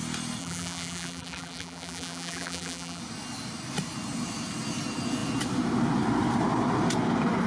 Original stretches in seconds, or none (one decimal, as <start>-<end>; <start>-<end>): 0.0-0.4; 3.0-7.5

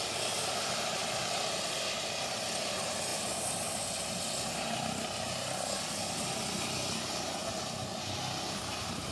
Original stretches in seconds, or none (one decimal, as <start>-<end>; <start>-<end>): 0.0-1.0; 1.7-9.1